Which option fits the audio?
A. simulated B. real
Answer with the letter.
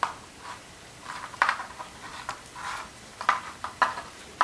B